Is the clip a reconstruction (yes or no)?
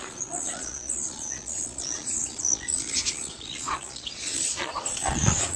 yes